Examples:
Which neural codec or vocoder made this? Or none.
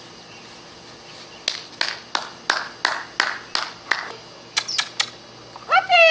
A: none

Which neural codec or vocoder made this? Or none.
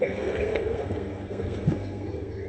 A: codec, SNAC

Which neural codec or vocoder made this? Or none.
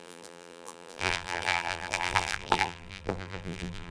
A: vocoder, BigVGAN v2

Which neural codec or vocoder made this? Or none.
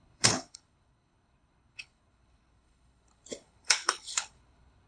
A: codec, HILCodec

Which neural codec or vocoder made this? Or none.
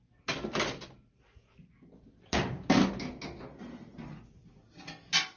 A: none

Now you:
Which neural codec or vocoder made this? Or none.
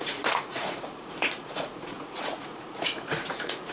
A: vocoder, Vocos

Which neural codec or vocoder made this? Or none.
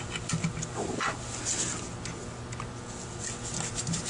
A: none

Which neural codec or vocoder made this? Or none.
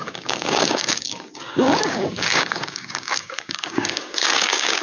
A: codec, DAC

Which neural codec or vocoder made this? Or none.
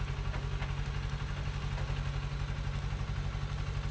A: none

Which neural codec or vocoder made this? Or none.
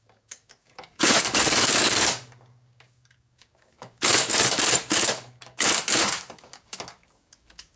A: codec, DAC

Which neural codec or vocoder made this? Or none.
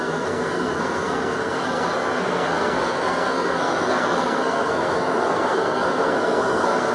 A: codec, SNAC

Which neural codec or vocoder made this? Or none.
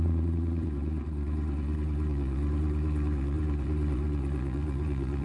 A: vocoder, Vocos